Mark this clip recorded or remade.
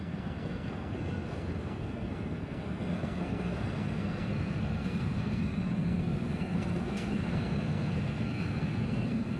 remade